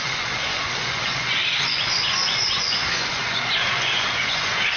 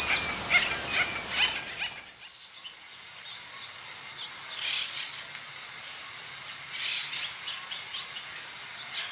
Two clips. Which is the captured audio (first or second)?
second